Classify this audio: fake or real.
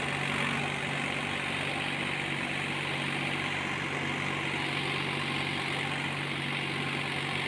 real